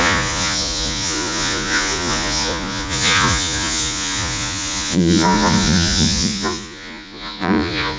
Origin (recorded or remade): remade